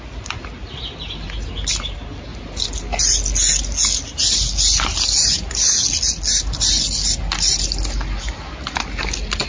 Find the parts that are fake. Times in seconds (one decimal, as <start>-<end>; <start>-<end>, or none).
none